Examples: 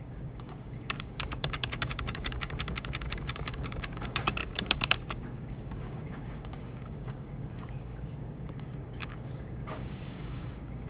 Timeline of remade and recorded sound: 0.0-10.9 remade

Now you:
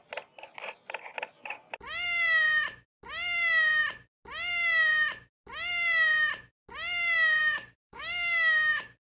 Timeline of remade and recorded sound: 0.0-7.4 recorded; 7.4-9.1 remade

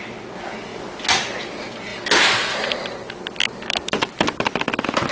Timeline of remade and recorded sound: 0.0-5.1 recorded

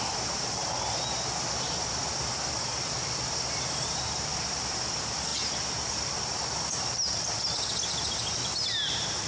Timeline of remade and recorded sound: 0.0-9.3 recorded